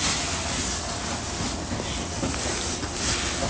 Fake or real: real